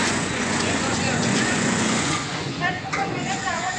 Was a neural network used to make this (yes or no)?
yes